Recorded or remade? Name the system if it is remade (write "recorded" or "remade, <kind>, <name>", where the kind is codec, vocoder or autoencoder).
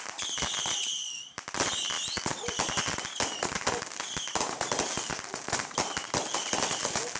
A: recorded